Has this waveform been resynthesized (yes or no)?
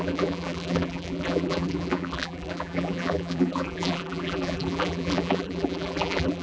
yes